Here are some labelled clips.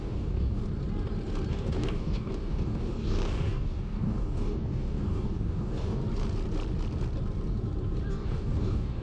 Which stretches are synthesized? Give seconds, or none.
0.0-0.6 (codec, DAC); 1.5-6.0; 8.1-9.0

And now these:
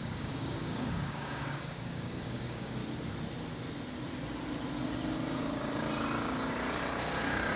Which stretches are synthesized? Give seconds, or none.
0.0-2.8 (codec, DAC); 7.0-7.6

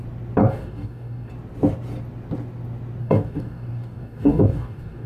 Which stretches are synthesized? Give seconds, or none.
0.4-1.3 (codec, DAC); 3.0-5.1

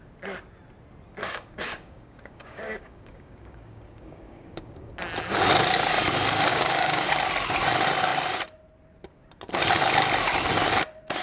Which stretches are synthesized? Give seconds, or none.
1.2-4.9 (codec, DAC); 6.5-7.1

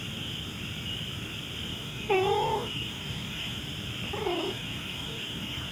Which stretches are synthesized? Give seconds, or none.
1.7-3.6 (codec, DAC); 4.2-5.7

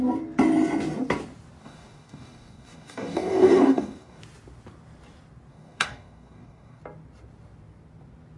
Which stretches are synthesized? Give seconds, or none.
1.6-4.2 (codec, DAC); 5.5-6.8

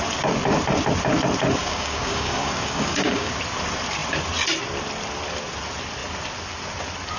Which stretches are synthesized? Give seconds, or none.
1.6-3.3 (codec, DAC)

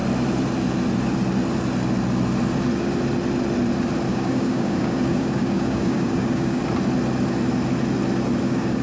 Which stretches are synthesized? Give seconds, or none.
4.1-6.6 (codec, DAC); 8.4-8.8